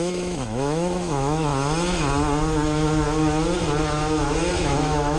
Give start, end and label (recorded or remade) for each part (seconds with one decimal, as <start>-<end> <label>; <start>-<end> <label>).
0.0-1.5 remade; 1.5-4.6 recorded; 4.6-5.2 remade